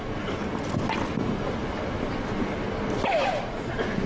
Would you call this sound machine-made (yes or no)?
no